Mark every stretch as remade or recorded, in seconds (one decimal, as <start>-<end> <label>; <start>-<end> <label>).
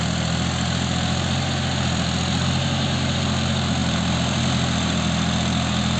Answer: 0.0-3.8 recorded; 3.8-4.4 remade; 4.4-6.0 recorded